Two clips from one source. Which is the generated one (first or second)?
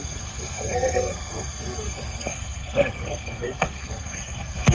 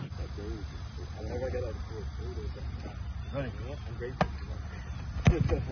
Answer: first